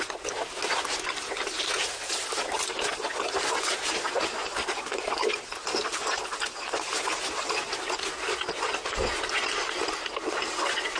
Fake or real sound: real